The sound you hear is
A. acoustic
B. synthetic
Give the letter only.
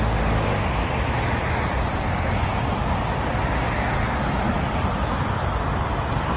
A